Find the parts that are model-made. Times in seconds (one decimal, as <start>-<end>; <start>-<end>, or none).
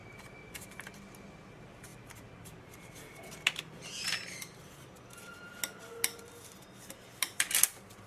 none